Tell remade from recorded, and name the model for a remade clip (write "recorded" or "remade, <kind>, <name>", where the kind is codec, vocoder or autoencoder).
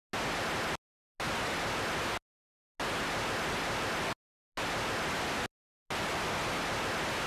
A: recorded